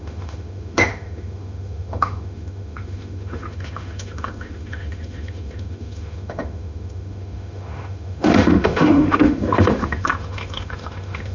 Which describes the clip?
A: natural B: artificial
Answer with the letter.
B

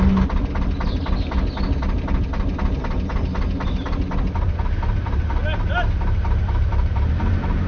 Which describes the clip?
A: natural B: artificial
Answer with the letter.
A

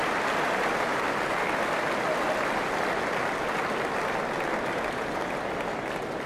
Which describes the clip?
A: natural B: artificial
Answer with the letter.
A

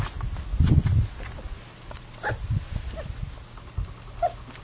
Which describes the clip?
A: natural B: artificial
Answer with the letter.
A